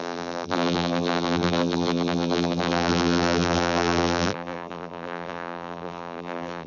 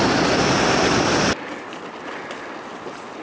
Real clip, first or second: second